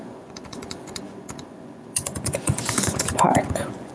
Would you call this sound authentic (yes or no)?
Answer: no